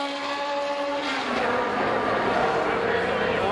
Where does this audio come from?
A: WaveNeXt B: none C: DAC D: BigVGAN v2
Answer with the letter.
B